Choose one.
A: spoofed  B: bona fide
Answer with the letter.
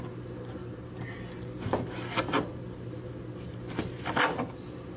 B